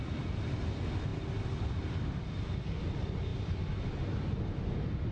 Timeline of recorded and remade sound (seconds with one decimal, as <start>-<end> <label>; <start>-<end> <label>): 0.0-5.1 recorded